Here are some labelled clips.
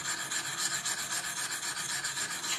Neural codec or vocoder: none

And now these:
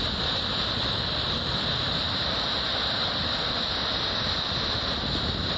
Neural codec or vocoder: none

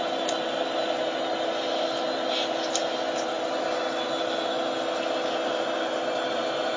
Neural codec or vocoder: none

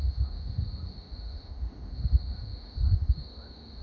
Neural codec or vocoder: autoencoder, DAC-VAE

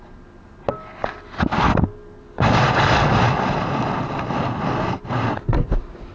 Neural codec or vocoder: none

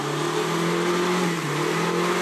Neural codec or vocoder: none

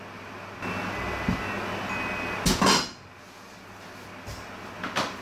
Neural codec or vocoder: none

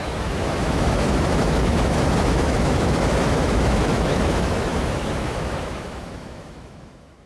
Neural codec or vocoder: autoencoder, DAC-VAE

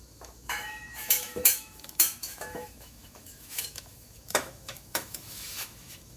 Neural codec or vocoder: autoencoder, DAC-VAE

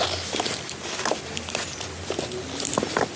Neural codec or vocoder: none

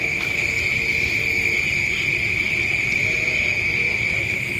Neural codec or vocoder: none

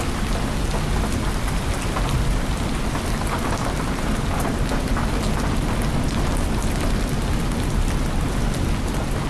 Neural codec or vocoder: none